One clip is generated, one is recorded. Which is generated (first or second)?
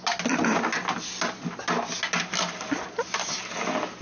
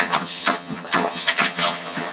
second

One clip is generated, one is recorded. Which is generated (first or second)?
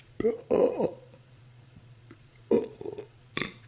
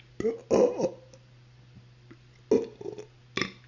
first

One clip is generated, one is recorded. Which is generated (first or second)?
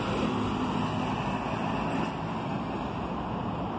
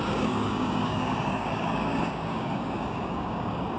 second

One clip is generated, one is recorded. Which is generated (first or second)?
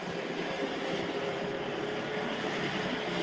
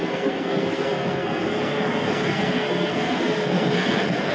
second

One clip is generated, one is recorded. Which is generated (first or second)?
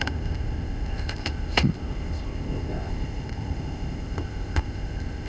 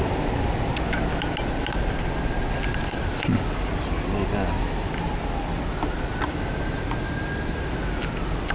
first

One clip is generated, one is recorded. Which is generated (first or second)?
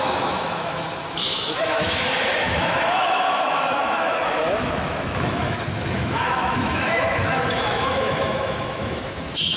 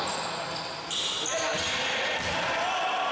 first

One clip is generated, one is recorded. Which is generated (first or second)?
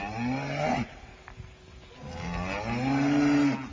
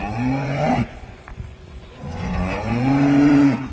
second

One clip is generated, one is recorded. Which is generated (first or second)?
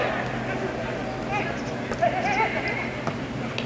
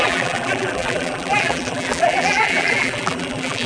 second